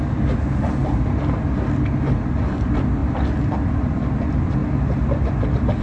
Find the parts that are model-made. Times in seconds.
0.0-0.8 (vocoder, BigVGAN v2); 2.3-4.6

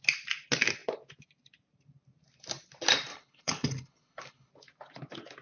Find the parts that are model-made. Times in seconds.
3.1-4.5 (codec, HILCodec)

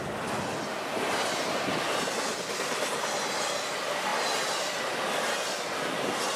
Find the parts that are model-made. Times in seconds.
none

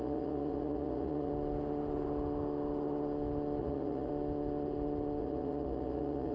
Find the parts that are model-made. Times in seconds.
0.0-1.3 (vocoder, Vocos); 3.6-4.1; 5.2-6.3